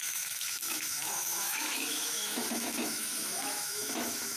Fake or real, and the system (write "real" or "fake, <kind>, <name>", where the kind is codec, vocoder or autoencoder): fake, autoencoder, DAC-VAE